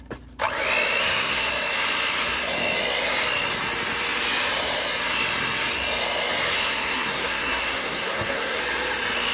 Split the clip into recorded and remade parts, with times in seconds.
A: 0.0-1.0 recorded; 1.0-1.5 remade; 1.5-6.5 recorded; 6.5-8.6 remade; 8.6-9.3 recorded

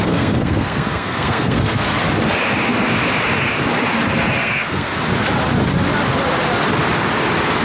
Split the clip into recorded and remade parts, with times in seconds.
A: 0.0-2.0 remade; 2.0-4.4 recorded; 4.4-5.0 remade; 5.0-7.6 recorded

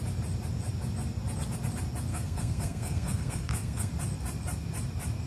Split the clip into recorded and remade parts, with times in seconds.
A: 0.0-2.1 recorded; 2.1-3.9 remade; 3.9-5.3 recorded

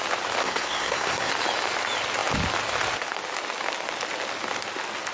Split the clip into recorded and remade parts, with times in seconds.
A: 0.0-0.4 recorded; 0.4-1.3 remade; 1.3-5.1 recorded

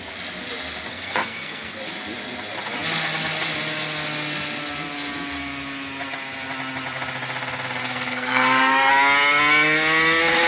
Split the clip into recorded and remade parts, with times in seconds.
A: 0.0-0.9 recorded; 0.9-1.8 remade; 1.8-7.8 recorded; 7.8-8.9 remade; 8.9-10.5 recorded

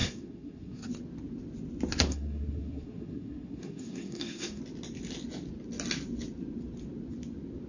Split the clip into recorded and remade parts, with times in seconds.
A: 0.0-0.9 remade; 0.9-2.1 recorded; 2.1-4.6 remade; 4.6-7.7 recorded

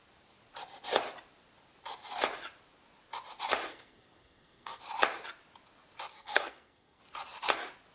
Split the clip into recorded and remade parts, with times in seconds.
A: 0.0-3.7 recorded; 3.7-4.8 remade; 4.8-6.1 recorded; 6.1-7.0 remade; 7.0-7.9 recorded